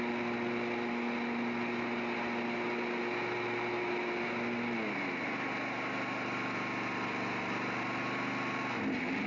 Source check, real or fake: real